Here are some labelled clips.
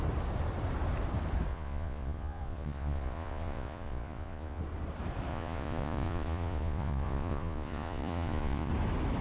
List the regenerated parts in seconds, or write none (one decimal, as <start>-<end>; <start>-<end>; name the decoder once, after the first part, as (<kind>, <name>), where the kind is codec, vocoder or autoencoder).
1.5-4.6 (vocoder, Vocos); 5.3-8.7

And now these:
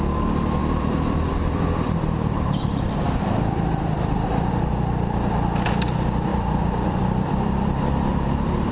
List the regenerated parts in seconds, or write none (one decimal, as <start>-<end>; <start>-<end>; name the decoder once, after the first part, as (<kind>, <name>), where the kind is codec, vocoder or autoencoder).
0.6-4.5 (vocoder, BigVGAN v2); 6.3-8.7

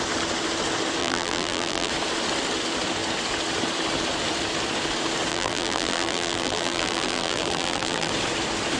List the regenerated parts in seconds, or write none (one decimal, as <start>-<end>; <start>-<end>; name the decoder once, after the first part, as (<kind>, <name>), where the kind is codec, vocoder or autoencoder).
1.0-1.9 (vocoder, BigVGAN v2); 5.3-8.1

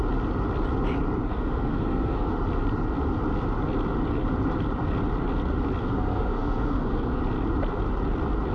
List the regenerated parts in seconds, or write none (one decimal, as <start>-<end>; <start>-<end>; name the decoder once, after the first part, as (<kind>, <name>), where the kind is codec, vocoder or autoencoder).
1.3-2.3 (codec, SNAC); 5.8-7.2

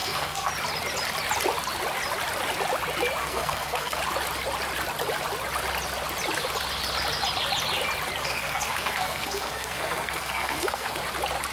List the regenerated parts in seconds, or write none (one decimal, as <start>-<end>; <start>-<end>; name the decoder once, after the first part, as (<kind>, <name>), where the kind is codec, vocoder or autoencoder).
0.0-0.5 (codec, SNAC); 3.2-4.0; 8.2-11.0

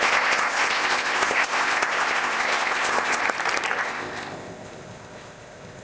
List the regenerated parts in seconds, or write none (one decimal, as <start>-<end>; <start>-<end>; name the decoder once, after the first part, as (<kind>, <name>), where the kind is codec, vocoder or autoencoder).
0.0-3.2 (codec, ZipCodec); 3.8-5.8

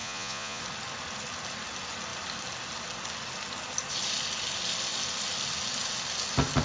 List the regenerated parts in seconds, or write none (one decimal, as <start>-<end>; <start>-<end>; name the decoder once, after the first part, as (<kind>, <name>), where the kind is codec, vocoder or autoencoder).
0.0-0.6 (vocoder, Vocos)